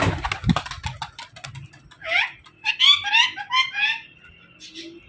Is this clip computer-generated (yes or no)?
no